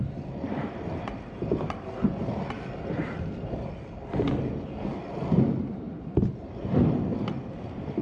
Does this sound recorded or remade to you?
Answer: recorded